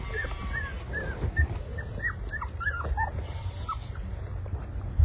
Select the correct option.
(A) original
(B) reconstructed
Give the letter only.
A